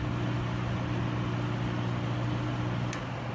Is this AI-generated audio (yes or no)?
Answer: no